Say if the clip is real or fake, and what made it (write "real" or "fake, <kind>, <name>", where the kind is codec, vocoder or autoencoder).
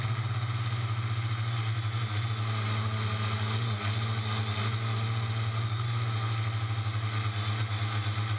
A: real